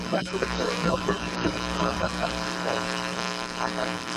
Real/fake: fake